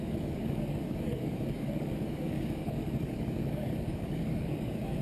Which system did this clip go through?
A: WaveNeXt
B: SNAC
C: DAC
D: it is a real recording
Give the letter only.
C